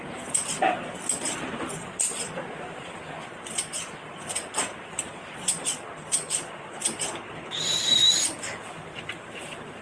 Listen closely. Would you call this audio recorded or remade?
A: recorded